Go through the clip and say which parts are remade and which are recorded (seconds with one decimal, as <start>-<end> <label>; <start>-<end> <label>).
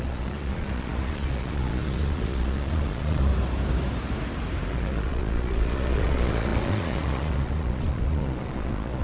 0.0-3.3 remade; 3.3-4.7 recorded; 4.7-9.0 remade